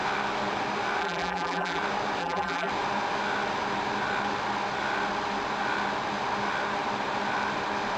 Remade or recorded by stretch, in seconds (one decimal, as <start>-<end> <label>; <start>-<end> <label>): 0.0-1.0 recorded; 1.0-1.8 remade; 1.8-2.2 recorded; 2.2-2.7 remade; 2.7-8.0 recorded

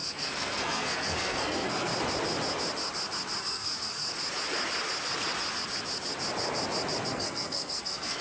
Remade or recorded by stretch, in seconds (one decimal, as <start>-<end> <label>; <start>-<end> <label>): 0.0-1.9 remade; 1.9-3.4 recorded; 3.4-4.1 remade; 4.1-7.1 recorded; 7.1-8.2 remade

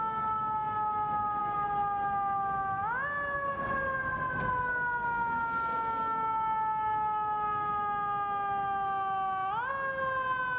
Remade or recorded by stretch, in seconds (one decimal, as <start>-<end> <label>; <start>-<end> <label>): 0.0-10.6 recorded

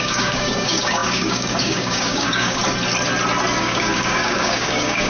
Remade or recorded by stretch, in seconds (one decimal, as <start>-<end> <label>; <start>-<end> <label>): 0.0-2.6 remade; 2.6-3.6 recorded; 3.6-5.1 remade

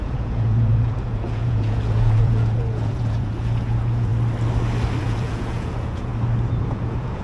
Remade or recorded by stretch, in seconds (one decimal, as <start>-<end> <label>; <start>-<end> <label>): 0.0-4.1 remade; 4.1-5.0 recorded; 5.0-6.1 remade; 6.1-6.6 recorded; 6.6-7.2 remade

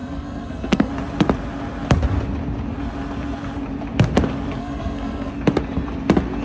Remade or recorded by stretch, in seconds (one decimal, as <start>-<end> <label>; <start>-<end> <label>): 0.0-0.9 remade; 0.9-4.6 recorded; 4.6-5.3 remade; 5.3-6.4 recorded

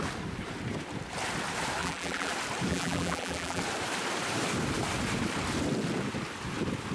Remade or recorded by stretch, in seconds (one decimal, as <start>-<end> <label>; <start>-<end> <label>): 0.0-1.8 recorded; 1.8-2.3 remade; 2.3-2.7 recorded; 2.7-3.6 remade; 3.6-6.9 recorded